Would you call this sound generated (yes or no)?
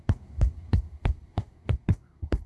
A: yes